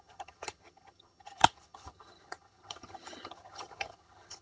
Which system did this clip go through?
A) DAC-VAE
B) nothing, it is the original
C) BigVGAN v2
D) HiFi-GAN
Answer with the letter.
D